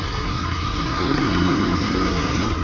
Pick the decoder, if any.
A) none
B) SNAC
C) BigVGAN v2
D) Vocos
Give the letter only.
B